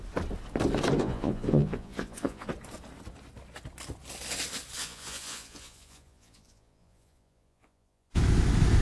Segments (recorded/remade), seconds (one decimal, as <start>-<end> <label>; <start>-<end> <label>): 0.0-1.0 recorded; 1.0-2.5 remade; 2.5-4.8 recorded; 4.8-8.2 remade; 8.2-8.8 recorded